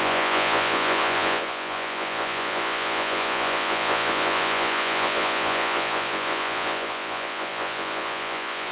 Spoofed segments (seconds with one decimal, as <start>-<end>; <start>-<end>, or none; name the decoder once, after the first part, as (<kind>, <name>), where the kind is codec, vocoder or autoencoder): 0.0-8.7 (vocoder, Vocos)